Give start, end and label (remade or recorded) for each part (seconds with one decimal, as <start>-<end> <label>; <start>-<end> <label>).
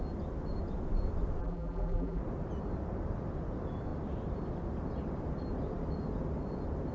0.0-1.4 recorded; 1.4-2.2 remade; 2.2-6.9 recorded